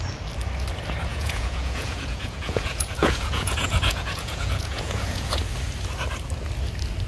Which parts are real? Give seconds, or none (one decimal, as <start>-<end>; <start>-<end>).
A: 0.0-1.1; 5.4-7.1